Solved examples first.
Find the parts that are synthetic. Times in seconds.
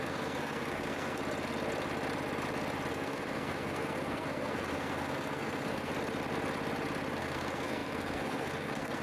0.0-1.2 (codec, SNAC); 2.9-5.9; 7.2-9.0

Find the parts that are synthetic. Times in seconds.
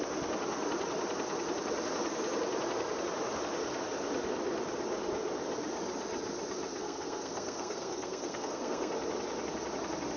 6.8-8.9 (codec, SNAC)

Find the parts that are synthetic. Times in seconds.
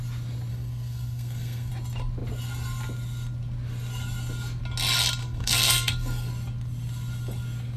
0.5-1.7 (codec, SNAC); 5.2-6.3